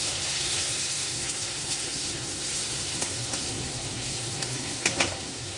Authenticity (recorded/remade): remade